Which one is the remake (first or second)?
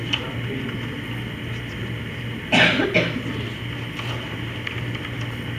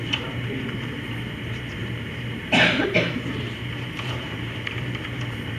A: second